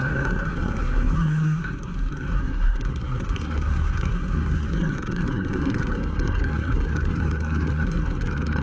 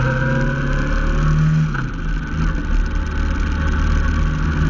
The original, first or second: second